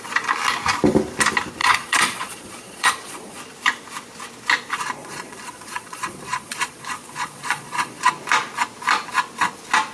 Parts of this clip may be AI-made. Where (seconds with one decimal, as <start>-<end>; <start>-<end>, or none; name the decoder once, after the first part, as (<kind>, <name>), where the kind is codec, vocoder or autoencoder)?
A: 1.6-3.4 (vocoder, Vocos); 5.0-8.1